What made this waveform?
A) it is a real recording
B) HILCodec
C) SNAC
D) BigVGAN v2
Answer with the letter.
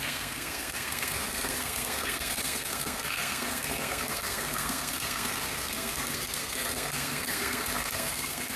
C